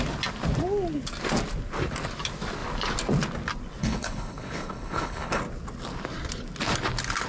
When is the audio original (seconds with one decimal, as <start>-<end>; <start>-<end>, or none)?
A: 0.0-3.8; 5.4-7.3